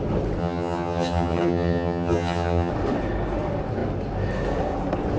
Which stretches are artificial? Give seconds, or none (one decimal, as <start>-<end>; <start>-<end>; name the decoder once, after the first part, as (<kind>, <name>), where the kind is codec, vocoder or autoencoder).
0.4-2.7 (vocoder, HiFi-GAN)